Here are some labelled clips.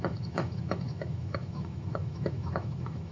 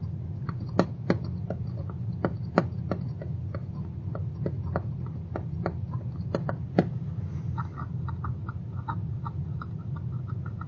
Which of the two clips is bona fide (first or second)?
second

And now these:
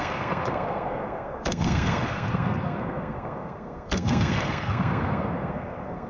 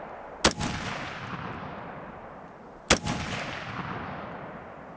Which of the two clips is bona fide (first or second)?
second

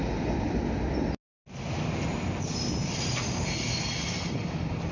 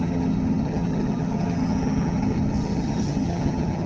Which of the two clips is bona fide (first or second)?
first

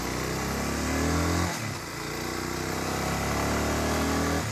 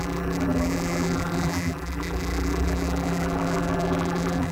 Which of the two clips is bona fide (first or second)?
first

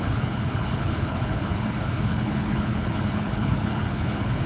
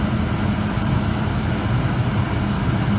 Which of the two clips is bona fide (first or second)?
second